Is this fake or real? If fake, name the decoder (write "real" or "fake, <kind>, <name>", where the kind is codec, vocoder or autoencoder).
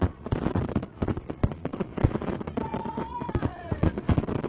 fake, vocoder, Vocos